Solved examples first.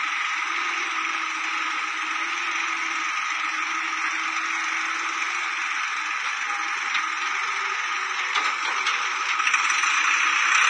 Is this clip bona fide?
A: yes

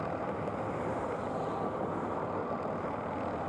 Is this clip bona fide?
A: yes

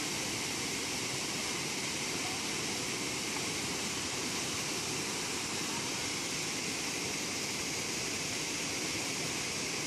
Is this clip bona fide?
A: no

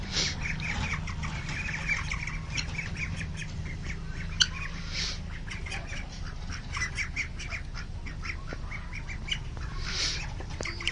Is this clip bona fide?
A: yes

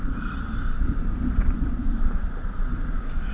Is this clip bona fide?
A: no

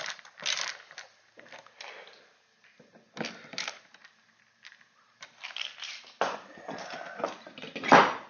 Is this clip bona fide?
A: no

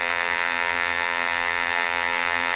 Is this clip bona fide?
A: no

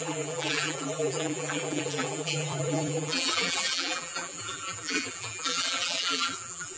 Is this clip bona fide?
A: no